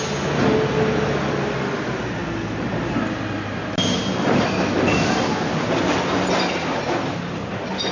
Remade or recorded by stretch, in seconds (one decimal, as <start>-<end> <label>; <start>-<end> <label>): 0.0-7.9 recorded